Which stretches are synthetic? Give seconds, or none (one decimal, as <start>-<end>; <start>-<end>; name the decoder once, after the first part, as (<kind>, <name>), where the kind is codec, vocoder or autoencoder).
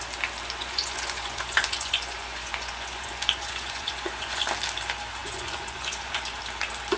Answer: 0.6-4.4 (vocoder, Vocos); 5.2-6.4